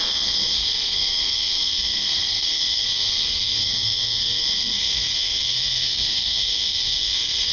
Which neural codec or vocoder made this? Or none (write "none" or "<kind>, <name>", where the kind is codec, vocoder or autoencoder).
codec, SNAC